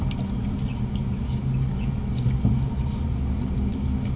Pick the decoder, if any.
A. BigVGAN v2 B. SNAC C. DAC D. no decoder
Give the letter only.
D